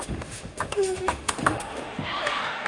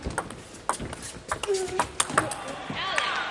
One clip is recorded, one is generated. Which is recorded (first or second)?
second